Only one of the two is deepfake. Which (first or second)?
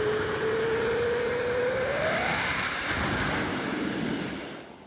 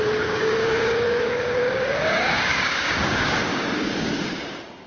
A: second